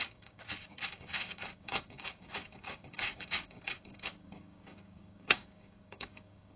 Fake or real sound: fake